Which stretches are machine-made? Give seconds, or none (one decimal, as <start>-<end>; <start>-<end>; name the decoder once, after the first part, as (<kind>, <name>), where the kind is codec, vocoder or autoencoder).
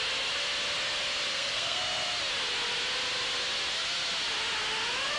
1.3-1.8 (codec, SNAC)